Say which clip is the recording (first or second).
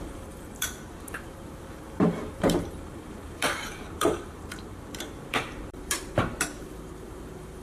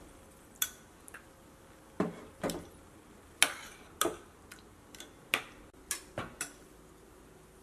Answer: second